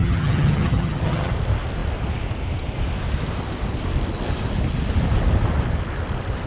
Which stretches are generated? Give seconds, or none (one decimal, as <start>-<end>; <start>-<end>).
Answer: 0.0-1.3